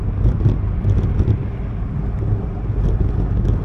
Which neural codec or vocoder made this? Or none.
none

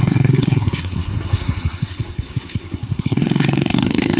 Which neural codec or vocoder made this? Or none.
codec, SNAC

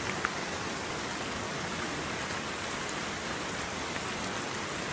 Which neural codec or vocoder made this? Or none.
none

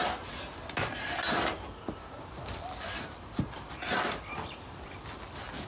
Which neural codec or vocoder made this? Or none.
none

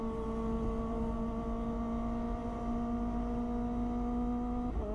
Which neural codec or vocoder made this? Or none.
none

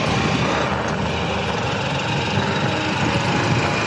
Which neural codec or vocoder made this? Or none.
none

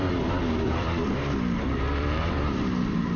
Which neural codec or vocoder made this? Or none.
vocoder, BigVGAN v2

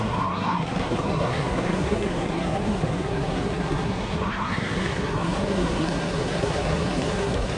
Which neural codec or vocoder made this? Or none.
codec, SNAC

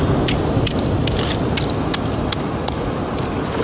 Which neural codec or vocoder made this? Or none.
none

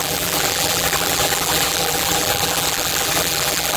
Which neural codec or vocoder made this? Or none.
vocoder, BigVGAN v2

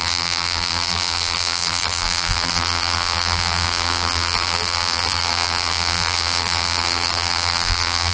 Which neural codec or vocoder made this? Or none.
vocoder, BigVGAN v2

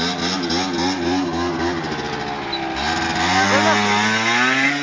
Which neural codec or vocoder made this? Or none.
none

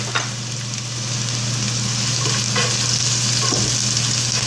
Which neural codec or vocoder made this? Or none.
none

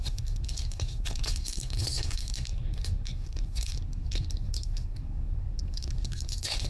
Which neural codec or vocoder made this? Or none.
codec, SNAC